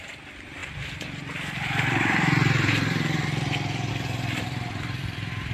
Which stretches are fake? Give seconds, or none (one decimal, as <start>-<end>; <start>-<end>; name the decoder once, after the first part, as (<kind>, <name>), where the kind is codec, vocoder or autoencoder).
0.0-5.5 (vocoder, BigVGAN v2)